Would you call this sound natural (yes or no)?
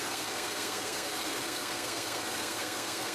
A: no